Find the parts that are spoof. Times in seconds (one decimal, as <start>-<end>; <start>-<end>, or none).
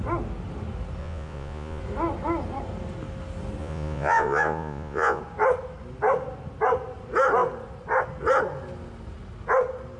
1.0-1.8; 3.6-5.2